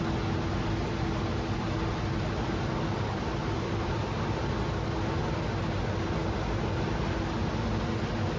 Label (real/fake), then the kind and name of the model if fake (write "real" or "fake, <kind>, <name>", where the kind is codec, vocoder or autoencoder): real